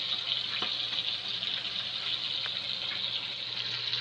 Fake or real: real